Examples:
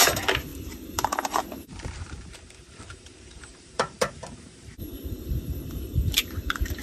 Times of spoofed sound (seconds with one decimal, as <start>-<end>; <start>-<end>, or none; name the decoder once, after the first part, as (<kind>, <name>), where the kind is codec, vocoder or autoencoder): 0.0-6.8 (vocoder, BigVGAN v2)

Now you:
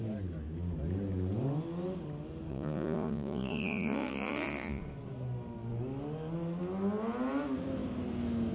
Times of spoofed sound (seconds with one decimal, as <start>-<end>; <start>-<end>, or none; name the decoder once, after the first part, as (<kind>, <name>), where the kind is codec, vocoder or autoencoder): 2.5-4.8 (vocoder, Vocos)

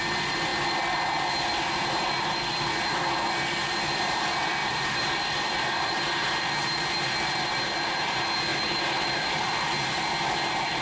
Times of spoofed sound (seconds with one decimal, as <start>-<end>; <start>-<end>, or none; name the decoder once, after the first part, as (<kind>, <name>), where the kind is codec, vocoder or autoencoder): 4.6-6.4 (vocoder, BigVGAN v2); 8.5-9.4